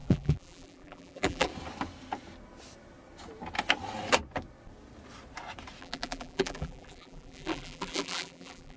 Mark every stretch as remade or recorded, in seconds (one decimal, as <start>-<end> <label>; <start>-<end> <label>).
0.0-1.5 remade; 1.5-5.8 recorded; 5.8-8.8 remade